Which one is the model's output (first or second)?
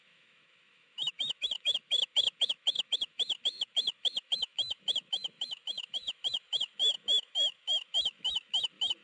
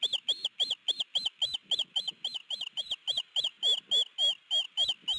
first